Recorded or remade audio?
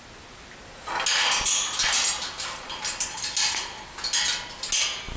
recorded